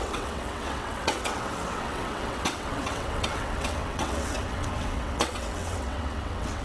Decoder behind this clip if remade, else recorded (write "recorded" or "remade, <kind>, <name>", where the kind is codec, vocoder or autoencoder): remade, vocoder, WaveNeXt